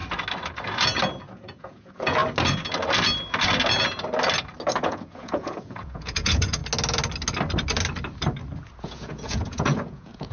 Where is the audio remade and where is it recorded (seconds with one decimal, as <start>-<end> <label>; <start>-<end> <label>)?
0.0-1.3 recorded; 1.3-2.2 remade; 2.2-4.8 recorded; 4.8-6.6 remade; 6.6-8.8 recorded; 8.8-10.3 remade